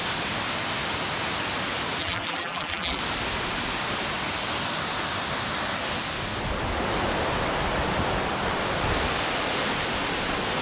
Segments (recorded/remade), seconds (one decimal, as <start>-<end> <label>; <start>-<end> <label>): 0.0-2.0 recorded; 2.0-3.0 remade; 3.0-10.6 recorded